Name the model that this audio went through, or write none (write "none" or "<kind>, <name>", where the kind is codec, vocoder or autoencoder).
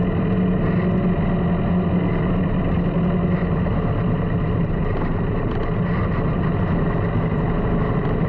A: none